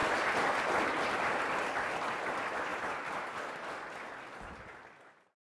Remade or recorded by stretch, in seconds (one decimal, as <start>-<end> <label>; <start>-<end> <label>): 0.0-1.9 remade; 1.9-5.5 recorded

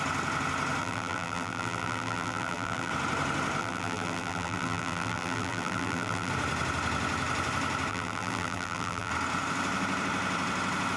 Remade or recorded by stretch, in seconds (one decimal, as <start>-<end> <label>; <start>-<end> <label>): 0.0-0.8 recorded; 0.8-2.9 remade; 2.9-3.6 recorded; 3.6-6.3 remade; 6.3-7.9 recorded; 7.9-9.1 remade; 9.1-11.0 recorded

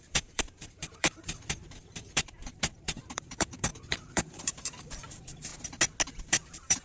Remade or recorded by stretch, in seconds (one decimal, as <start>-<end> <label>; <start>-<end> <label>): 0.0-5.5 remade; 5.5-6.2 recorded; 6.2-6.8 remade